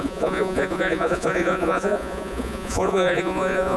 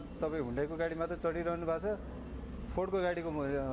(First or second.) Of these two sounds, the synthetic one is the first